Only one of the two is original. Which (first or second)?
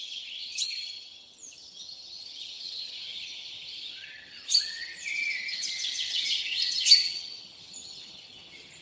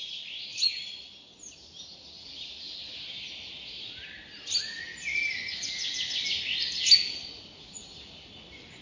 second